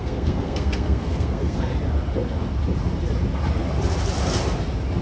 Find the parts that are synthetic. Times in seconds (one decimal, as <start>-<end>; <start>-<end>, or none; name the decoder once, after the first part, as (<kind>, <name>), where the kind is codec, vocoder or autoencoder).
0.0-1.7 (codec, SNAC)